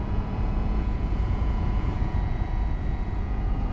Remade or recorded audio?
remade